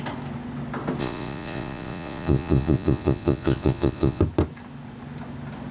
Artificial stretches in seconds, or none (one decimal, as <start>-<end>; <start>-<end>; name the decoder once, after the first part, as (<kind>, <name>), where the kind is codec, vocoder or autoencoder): 1.0-4.2 (vocoder, Vocos)